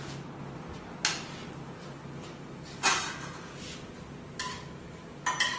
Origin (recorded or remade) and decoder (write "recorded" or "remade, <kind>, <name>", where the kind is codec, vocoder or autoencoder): recorded